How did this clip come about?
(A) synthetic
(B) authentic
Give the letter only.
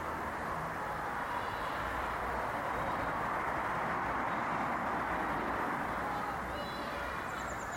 A